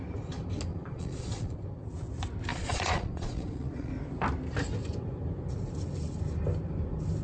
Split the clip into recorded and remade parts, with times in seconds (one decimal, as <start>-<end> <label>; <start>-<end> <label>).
0.0-0.7 recorded; 0.7-1.6 remade; 1.6-2.5 recorded; 2.5-3.9 remade; 3.9-7.2 recorded